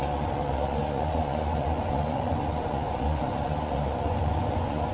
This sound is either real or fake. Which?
fake